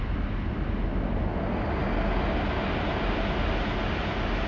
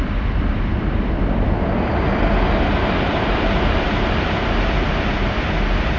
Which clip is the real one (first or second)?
first